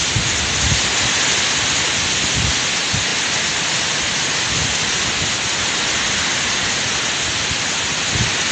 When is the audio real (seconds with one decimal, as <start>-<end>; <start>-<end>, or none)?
0.0-8.5

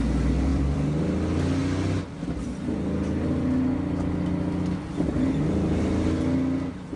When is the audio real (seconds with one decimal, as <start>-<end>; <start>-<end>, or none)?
0.0-0.5; 1.0-7.0

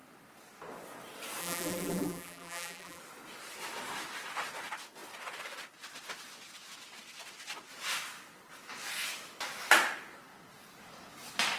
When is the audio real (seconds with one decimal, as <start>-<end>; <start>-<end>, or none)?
0.0-1.4; 3.0-11.6